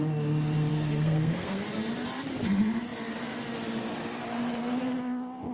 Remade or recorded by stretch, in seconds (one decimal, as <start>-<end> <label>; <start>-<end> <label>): 0.0-0.7 recorded; 0.7-1.6 remade; 1.6-5.5 recorded